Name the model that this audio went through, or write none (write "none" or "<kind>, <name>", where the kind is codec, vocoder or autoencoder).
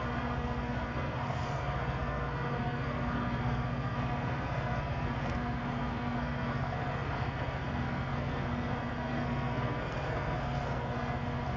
codec, SNAC